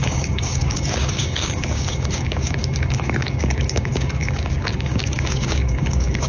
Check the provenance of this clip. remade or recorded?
remade